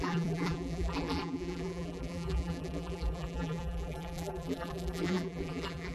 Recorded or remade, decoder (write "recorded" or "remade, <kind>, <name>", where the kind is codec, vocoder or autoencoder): remade, vocoder, BigVGAN v2